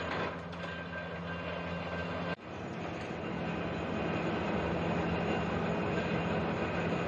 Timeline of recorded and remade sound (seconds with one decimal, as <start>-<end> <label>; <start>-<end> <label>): 0.0-7.1 recorded